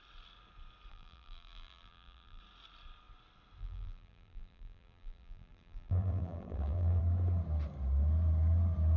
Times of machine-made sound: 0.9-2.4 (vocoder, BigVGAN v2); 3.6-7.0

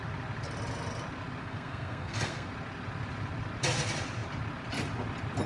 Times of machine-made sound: 1.4-2.5 (codec, SNAC)

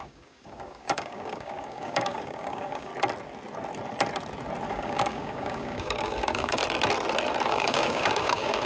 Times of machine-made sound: 0.0-2.9 (codec, DAC); 4.7-6.6; 7.5-8.7

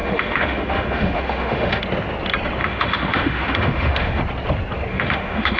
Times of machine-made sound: 0.0-1.8 (autoencoder, DAC-VAE); 2.6-4.2; 4.9-5.6

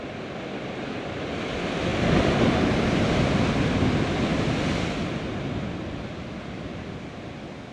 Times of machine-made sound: 4.3-6.9 (vocoder, BigVGAN v2)

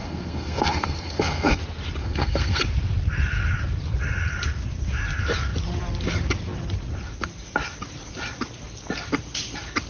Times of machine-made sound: 0.0-1.6 (codec, SNAC); 2.0-2.6

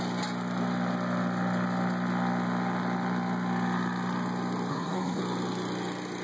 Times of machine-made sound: 4.7-5.2 (codec, SNAC)